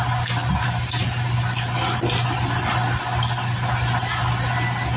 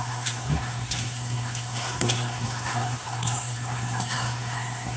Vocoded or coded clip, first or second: second